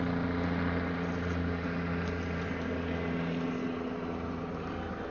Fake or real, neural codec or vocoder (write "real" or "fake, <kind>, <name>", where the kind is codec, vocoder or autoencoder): real